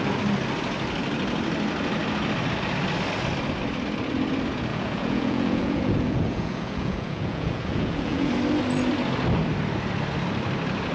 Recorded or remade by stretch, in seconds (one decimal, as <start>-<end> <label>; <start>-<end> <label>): 0.0-4.7 recorded; 4.7-8.3 remade; 8.3-10.9 recorded